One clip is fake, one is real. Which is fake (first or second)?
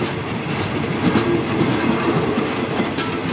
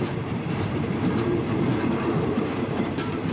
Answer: second